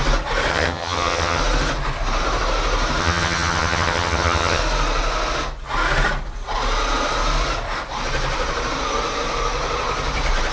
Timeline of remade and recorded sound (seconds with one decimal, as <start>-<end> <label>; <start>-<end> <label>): 0.0-0.5 recorded; 0.5-1.4 remade; 1.4-3.0 recorded; 3.0-4.6 remade; 4.6-10.5 recorded